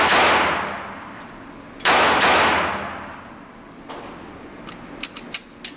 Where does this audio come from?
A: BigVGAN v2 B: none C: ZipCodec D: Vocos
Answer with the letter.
B